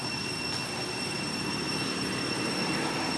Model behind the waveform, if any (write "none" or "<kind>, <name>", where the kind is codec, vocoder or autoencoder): none